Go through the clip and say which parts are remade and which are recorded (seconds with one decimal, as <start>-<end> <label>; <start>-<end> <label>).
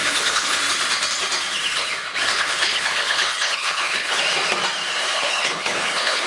0.0-0.6 remade; 0.6-2.3 recorded; 2.3-4.2 remade; 4.2-5.0 recorded; 5.0-6.3 remade